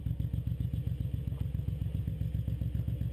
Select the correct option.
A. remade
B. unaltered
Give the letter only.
B